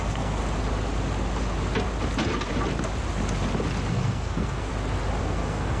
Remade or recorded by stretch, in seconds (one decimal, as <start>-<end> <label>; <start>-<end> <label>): 0.0-0.4 remade; 0.4-3.9 recorded; 3.9-4.7 remade; 4.7-5.2 recorded; 5.2-5.8 remade